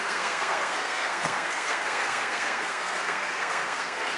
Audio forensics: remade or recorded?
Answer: remade